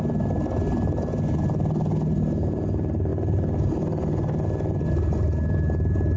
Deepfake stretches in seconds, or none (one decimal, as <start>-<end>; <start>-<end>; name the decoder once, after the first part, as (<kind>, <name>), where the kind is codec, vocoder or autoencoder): none